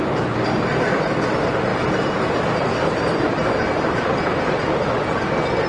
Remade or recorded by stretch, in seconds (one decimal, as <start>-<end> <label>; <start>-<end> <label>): 0.0-5.7 recorded